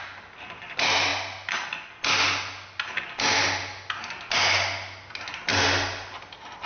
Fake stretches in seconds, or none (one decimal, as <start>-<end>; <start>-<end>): none